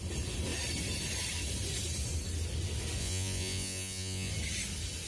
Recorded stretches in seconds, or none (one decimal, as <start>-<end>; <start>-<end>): 0.0-3.0; 4.3-5.1

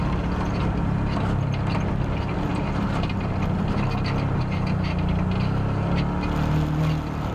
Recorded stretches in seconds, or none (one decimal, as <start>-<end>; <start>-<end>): 0.0-7.3

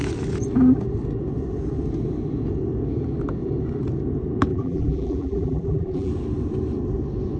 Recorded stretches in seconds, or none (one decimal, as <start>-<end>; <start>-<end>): 0.0-4.5; 6.1-7.4